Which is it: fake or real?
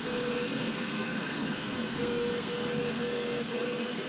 fake